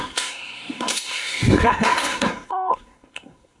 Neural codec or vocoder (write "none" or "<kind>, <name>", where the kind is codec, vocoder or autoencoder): codec, SNAC